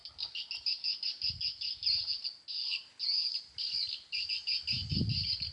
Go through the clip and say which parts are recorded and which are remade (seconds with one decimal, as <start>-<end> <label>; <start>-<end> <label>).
0.0-5.5 recorded